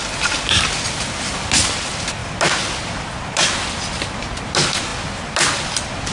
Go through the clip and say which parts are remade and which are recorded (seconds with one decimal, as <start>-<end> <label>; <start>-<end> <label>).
0.0-6.1 recorded